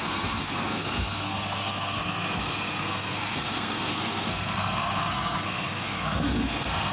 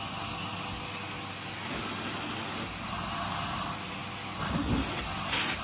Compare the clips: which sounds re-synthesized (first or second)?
first